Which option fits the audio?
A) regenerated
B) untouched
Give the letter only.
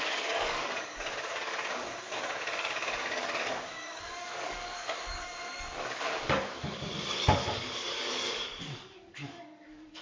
A